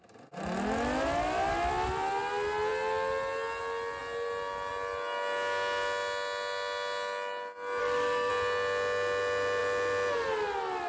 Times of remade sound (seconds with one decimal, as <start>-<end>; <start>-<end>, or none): 7.8-8.3